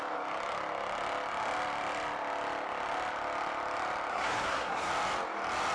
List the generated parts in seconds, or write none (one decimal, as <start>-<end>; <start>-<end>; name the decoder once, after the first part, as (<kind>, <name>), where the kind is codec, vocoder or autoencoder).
4.1-4.9 (codec, SNAC)